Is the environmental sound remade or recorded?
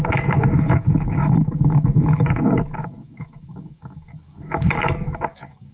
remade